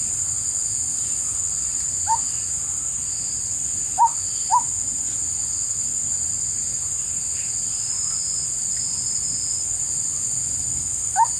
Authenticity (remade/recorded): recorded